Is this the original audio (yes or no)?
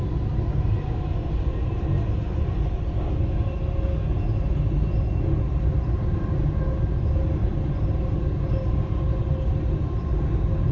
yes